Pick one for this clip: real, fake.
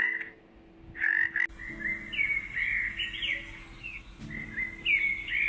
real